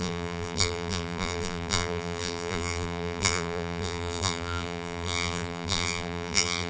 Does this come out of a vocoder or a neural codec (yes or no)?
yes